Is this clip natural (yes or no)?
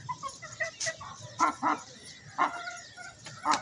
no